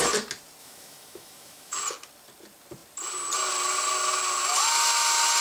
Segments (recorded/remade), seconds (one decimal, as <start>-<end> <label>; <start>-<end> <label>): 0.0-0.6 recorded; 0.6-1.8 remade; 1.8-5.4 recorded